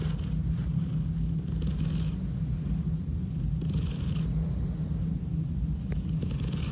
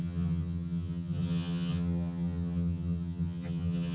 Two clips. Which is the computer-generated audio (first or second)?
second